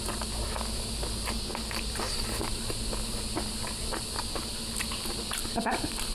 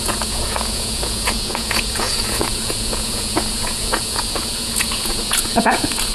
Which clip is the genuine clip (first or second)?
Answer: first